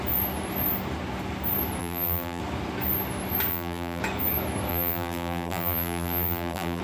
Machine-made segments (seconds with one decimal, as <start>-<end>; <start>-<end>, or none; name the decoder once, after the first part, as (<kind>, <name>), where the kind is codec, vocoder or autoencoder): 1.8-2.4 (vocoder, BigVGAN v2); 3.5-4.0; 4.7-6.8